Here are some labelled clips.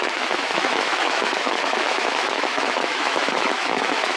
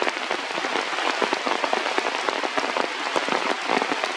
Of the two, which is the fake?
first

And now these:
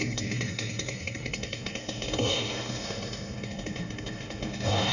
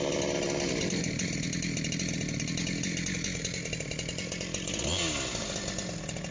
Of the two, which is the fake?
first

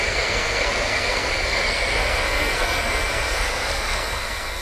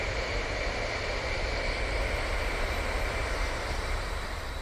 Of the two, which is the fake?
first